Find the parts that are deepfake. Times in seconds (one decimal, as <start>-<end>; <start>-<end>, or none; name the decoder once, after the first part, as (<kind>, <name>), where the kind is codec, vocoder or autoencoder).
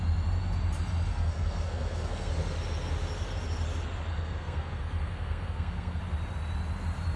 1.1-2.3 (codec, SNAC); 4.1-6.0